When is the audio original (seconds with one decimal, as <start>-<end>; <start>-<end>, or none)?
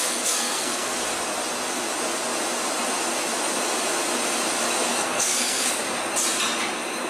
0.9-4.9; 5.8-7.1